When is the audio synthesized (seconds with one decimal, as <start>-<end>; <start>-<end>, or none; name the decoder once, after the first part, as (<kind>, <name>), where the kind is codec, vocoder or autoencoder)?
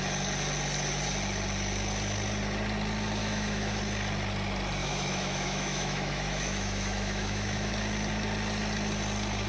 3.2-3.8 (autoencoder, DAC-VAE); 4.8-7.7